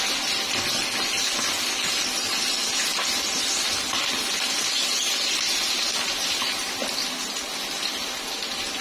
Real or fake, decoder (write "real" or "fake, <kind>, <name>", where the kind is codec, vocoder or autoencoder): real